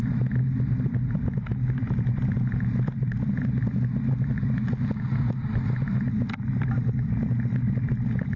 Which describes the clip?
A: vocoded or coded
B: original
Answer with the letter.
B